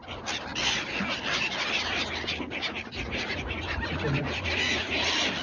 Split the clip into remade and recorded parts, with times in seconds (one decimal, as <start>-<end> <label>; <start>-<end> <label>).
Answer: 0.0-2.9 recorded; 2.9-4.9 remade; 4.9-5.4 recorded